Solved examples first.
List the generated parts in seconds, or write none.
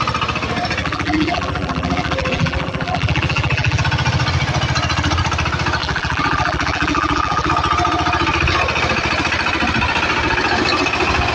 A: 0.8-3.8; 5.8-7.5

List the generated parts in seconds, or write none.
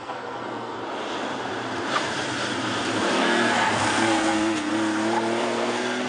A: 0.0-0.8; 3.1-4.7; 5.4-6.1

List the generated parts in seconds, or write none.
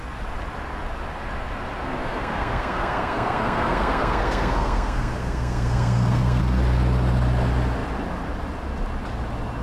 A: 2.0-6.4